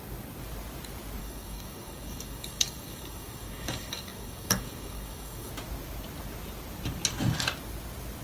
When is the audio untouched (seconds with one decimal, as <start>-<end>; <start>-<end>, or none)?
0.0-1.2; 5.5-8.2